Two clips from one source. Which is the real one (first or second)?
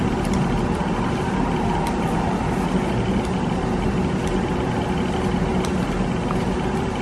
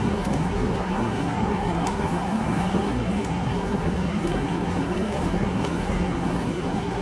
first